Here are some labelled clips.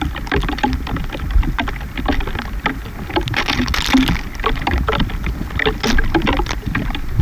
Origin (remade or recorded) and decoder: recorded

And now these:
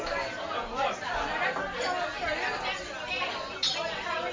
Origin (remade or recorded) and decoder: recorded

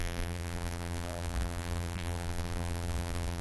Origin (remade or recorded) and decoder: remade, vocoder, BigVGAN v2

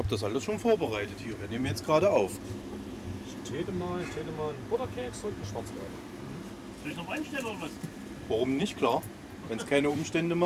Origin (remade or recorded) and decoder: remade, vocoder, BigVGAN v2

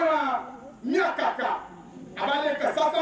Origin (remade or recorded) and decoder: remade, vocoder, BigVGAN v2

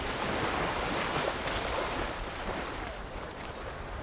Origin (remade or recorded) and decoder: remade, vocoder, BigVGAN v2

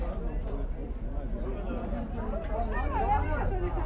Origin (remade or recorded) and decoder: remade, vocoder, BigVGAN v2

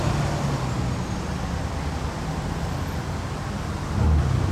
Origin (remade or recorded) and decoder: recorded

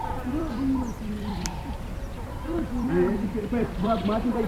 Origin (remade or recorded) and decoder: remade, vocoder, BigVGAN v2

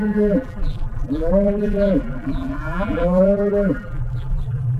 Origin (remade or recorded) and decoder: remade, vocoder, BigVGAN v2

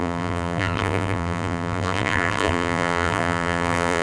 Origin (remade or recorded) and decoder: remade, vocoder, BigVGAN v2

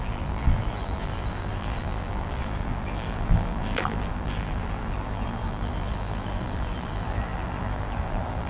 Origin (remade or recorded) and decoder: remade, vocoder, BigVGAN v2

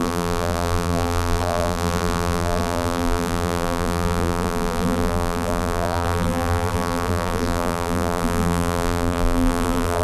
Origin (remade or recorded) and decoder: remade, vocoder, BigVGAN v2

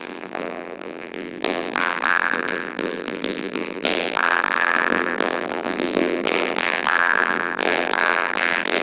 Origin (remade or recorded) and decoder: remade, vocoder, BigVGAN v2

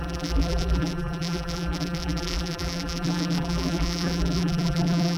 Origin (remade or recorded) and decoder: remade, vocoder, BigVGAN v2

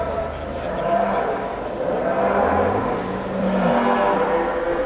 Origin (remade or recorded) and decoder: recorded